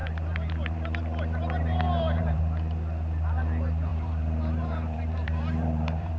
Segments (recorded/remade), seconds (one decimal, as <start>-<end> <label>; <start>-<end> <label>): 0.0-2.4 remade; 2.4-3.9 recorded; 3.9-6.2 remade